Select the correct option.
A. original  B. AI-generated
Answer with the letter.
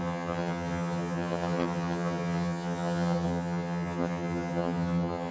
B